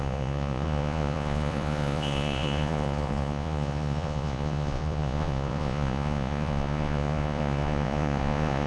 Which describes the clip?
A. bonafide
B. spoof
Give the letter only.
B